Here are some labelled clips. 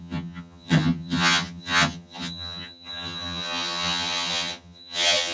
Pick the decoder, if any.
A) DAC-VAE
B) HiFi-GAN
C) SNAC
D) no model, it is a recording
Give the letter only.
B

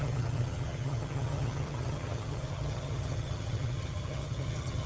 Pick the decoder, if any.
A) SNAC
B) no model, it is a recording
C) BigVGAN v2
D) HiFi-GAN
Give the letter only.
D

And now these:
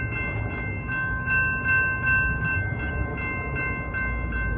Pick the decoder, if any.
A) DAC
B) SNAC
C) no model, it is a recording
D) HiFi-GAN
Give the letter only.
C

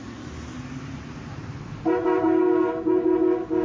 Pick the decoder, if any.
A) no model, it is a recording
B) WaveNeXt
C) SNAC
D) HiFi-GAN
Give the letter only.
A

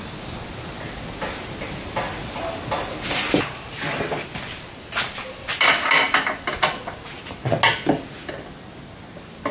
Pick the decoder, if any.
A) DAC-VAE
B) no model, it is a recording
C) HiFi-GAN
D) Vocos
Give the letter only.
B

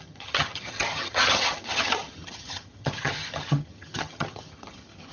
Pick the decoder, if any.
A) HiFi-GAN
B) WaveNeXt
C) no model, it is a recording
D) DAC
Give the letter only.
A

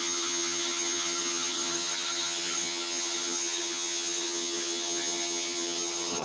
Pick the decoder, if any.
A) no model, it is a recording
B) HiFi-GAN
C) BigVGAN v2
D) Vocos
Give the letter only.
B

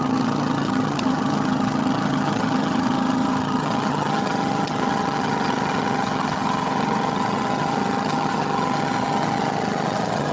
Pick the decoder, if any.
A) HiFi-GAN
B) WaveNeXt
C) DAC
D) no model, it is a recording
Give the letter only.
A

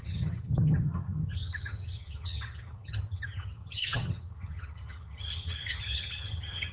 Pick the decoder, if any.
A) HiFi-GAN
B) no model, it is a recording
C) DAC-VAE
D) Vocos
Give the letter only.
A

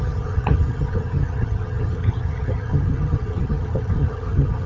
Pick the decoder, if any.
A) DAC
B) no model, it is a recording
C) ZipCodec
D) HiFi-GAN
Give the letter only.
D